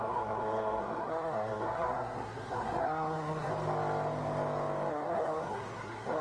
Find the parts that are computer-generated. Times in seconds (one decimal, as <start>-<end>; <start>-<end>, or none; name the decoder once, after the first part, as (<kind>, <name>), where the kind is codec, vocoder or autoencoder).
0.0-3.5 (codec, SNAC); 4.9-6.2